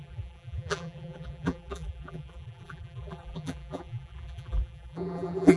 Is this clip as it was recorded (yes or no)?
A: no